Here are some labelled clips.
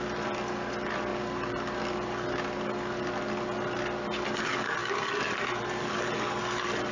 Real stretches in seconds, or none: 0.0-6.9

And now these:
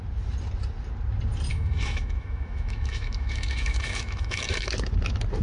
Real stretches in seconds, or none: 0.0-1.5; 4.7-5.4

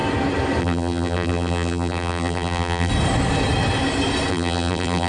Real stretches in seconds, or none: 0.0-0.6; 2.9-4.3

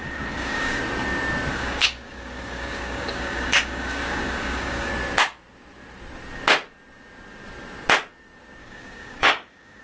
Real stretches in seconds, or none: 0.8-1.5; 4.9-8.6